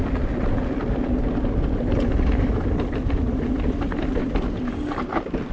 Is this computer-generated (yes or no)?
no